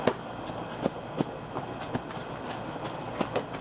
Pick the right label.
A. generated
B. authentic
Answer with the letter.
B